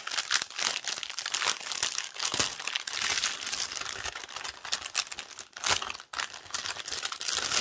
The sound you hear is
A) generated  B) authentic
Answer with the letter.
B